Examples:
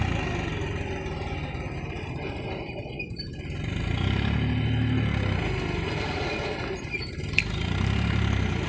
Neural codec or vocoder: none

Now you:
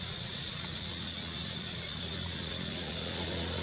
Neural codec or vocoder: vocoder, Vocos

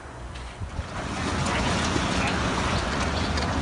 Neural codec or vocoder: vocoder, Vocos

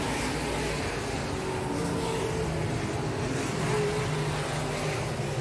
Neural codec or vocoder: none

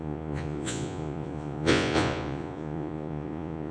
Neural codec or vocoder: vocoder, Vocos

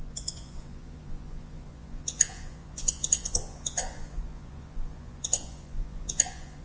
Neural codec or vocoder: vocoder, Vocos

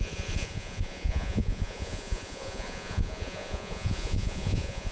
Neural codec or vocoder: vocoder, Vocos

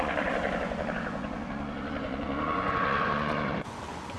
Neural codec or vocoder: vocoder, Vocos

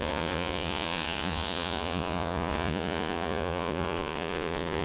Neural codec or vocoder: vocoder, Vocos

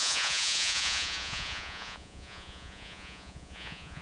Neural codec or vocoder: vocoder, Vocos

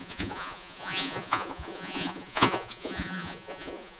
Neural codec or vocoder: vocoder, Vocos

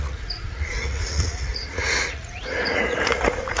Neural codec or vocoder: vocoder, Vocos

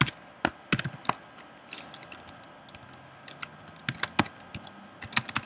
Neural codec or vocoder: none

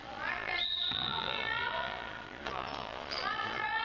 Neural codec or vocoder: vocoder, Vocos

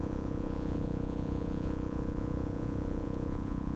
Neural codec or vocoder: vocoder, Vocos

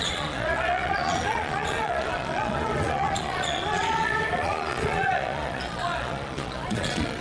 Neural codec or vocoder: vocoder, Vocos